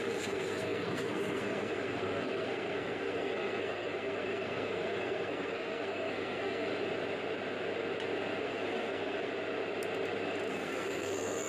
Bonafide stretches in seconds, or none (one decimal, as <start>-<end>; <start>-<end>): 6.7-8.4; 9.3-10.5

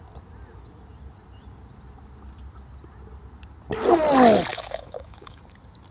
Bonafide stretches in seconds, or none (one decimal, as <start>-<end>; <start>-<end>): 0.0-4.5; 5.4-5.9